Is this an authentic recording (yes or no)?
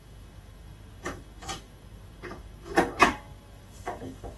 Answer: no